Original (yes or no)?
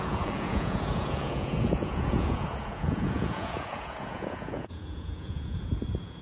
no